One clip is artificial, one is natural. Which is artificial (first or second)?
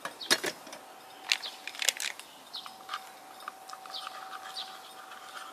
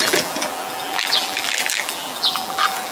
second